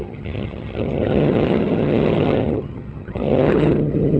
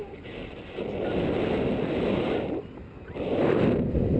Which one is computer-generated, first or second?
first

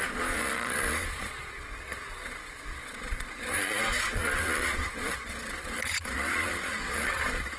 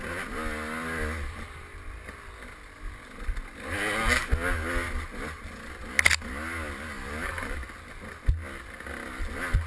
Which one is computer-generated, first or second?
first